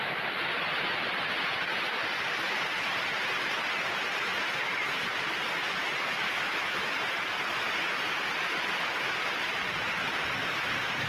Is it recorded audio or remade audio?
recorded